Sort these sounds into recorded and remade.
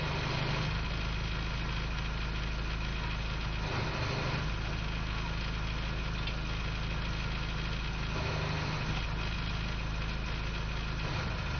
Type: recorded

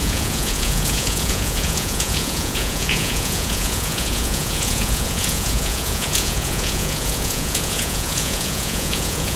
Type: remade